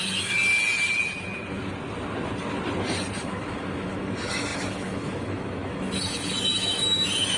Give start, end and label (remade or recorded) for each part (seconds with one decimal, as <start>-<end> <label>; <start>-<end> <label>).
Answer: 0.0-0.5 remade; 0.5-3.2 recorded; 3.2-7.4 remade